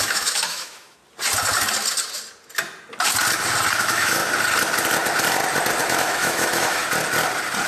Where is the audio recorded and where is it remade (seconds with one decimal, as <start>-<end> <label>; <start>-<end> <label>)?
0.0-1.0 remade; 1.0-3.8 recorded; 3.8-4.2 remade; 4.2-5.8 recorded; 5.8-6.8 remade; 6.8-7.7 recorded